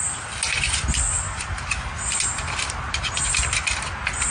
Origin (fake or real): real